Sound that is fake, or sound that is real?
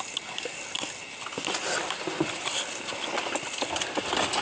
real